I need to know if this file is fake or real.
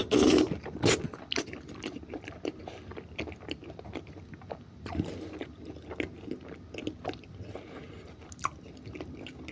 real